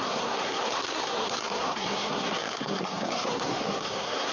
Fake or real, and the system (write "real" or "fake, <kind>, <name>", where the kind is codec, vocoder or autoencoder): fake, codec, SNAC